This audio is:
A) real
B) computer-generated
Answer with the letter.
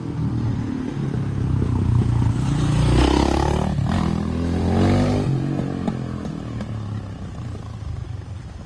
A